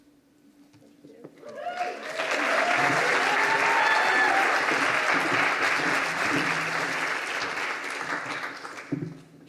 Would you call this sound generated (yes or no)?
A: no